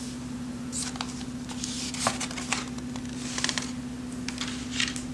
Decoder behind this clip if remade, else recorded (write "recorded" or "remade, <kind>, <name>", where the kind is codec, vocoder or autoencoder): recorded